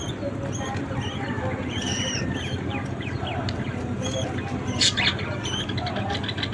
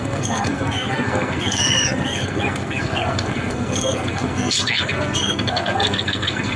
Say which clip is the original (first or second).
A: first